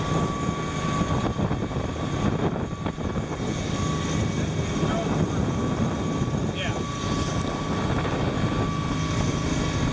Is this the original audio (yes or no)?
yes